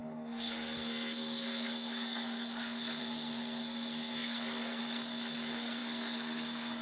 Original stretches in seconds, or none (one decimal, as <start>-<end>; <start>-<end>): none